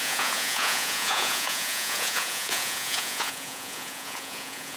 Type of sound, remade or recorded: remade